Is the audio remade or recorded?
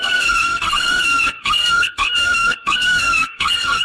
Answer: remade